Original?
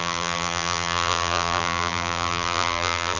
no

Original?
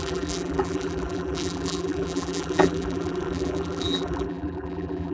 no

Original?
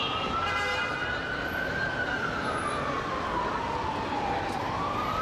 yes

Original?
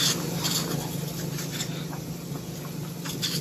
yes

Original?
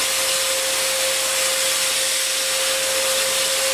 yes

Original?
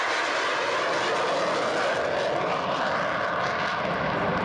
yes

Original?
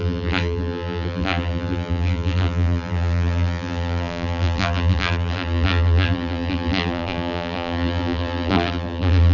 no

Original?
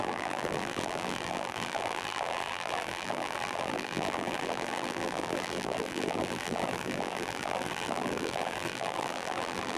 no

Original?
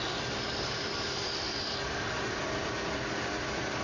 no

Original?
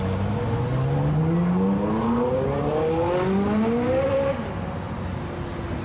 yes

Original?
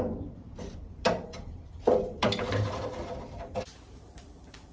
no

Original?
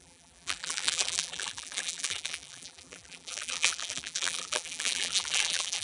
no